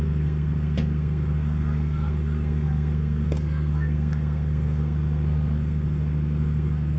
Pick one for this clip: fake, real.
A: fake